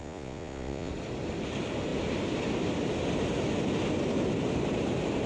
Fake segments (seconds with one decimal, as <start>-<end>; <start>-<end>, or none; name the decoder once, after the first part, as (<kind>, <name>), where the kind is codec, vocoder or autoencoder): 0.0-0.9 (vocoder, Vocos)